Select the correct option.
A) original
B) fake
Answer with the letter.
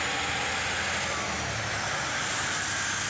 A